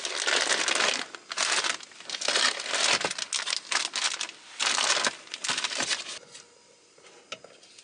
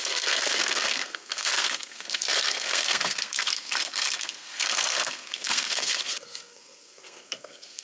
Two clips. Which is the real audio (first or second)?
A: first